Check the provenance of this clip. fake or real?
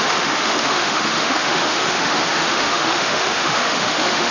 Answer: fake